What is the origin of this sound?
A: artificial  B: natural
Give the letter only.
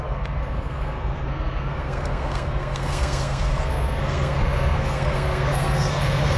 A